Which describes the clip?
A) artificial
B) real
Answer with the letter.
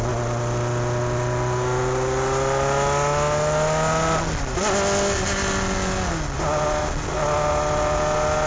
B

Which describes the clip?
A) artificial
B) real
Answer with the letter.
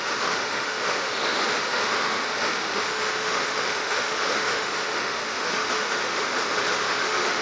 A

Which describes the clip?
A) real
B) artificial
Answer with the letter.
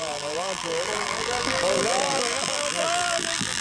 B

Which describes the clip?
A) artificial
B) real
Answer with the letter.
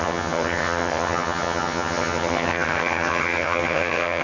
A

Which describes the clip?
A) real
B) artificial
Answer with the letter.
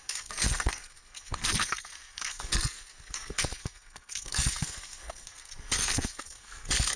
B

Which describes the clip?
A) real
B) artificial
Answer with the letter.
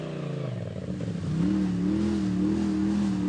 A